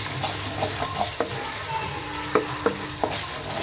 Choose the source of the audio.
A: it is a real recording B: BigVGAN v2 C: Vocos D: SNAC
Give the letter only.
A